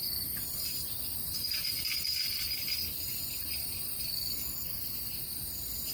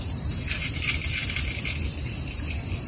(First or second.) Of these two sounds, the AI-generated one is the second